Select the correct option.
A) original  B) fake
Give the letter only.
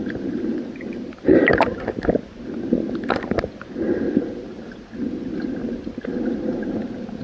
A